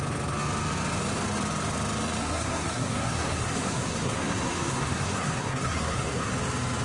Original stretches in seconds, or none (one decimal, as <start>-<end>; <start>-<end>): 0.0-2.2; 6.3-6.8